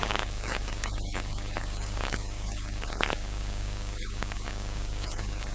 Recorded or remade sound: remade